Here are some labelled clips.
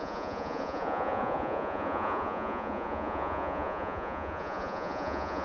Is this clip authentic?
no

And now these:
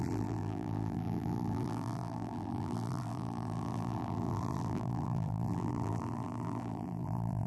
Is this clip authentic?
no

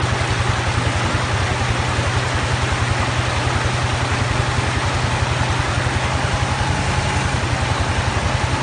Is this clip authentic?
yes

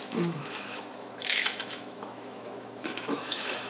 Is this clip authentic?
no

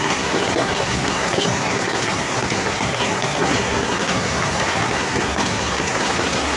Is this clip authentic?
no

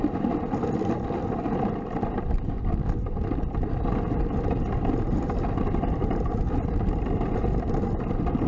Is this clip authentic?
yes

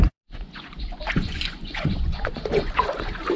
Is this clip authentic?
no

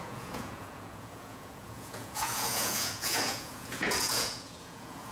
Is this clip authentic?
no